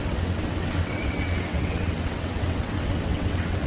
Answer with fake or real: fake